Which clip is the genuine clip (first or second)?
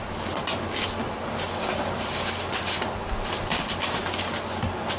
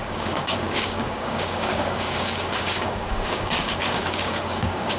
first